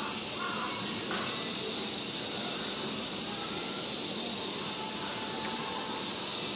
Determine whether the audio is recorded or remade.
recorded